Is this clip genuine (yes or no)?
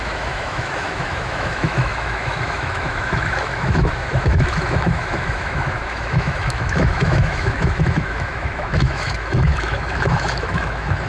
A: no